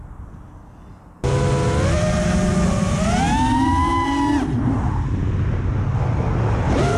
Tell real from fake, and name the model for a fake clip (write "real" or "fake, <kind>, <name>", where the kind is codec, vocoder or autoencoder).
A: real